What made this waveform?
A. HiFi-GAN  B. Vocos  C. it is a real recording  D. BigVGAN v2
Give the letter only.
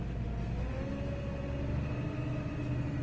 C